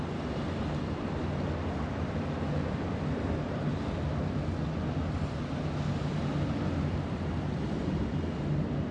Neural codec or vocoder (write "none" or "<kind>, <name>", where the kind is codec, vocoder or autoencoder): none